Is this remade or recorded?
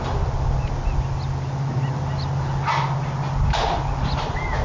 recorded